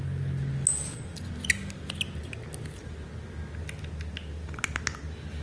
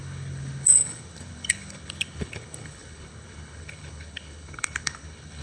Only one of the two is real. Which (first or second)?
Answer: first